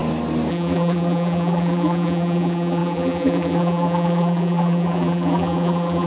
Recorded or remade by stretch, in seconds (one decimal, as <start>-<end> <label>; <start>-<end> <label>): 0.0-0.5 recorded; 0.5-6.1 remade